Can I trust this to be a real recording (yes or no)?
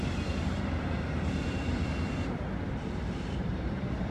no